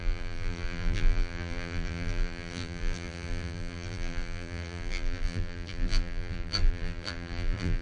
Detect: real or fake fake